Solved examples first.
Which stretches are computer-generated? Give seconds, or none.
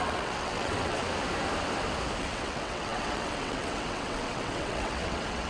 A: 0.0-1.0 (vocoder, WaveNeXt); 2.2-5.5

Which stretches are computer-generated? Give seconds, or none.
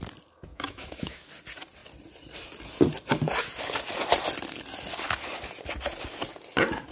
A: 0.5-1.3 (autoencoder, DAC-VAE)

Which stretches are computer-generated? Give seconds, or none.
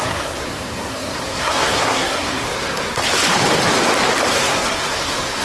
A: 0.0-3.0 (codec, SNAC); 4.3-5.4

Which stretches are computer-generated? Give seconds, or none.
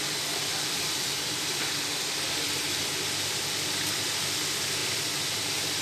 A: 0.5-1.7 (vocoder, BigVGAN v2)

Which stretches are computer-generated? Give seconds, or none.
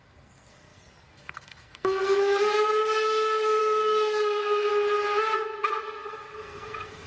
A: 0.0-4.7 (codec, SNAC); 5.8-7.1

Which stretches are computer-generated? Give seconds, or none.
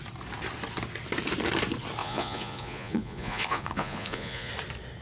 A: 2.0-4.5 (vocoder, Vocos)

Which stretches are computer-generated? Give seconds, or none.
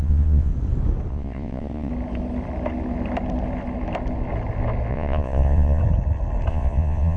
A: 0.0-0.5 (vocoder, Vocos); 1.1-1.9; 4.9-5.8; 6.5-7.2